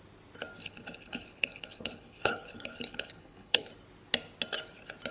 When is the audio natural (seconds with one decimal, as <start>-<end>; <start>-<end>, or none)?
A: 0.0-0.6; 3.7-5.1